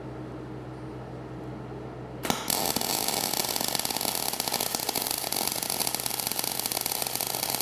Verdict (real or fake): real